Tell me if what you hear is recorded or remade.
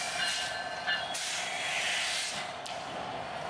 recorded